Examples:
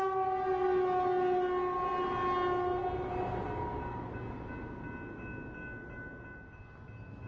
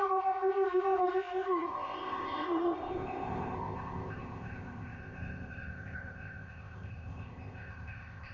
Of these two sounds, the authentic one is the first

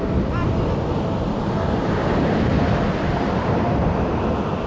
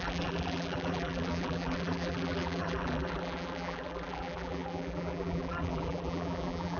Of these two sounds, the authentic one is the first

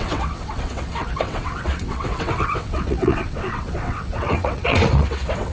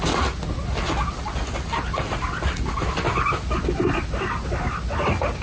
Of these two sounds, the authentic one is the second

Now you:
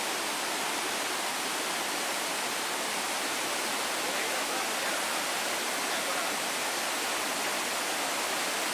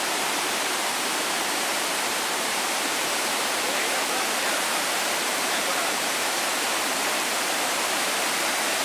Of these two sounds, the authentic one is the first